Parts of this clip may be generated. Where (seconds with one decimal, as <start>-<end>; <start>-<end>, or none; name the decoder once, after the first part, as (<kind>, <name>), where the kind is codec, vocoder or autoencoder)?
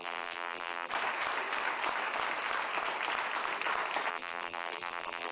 0.0-0.9 (vocoder, BigVGAN v2); 4.1-5.3